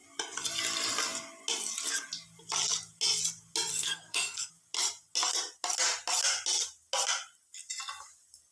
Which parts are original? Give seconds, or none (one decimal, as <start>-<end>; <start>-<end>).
0.0-3.7; 4.5-8.5